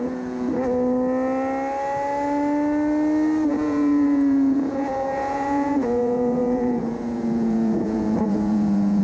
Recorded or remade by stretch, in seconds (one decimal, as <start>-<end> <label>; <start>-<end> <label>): 0.0-0.5 remade; 0.5-3.5 recorded; 3.5-9.0 remade

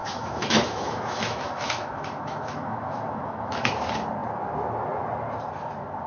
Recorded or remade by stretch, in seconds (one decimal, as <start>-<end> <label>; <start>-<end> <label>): 0.0-3.7 remade; 3.7-6.1 recorded